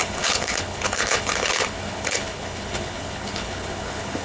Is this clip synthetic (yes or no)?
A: yes